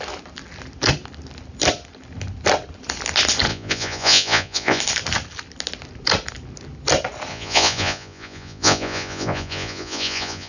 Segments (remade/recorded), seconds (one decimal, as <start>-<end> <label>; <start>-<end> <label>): 0.0-3.5 recorded; 3.5-4.8 remade; 4.8-7.3 recorded; 7.3-10.5 remade